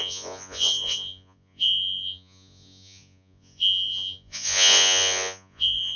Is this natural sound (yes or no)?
no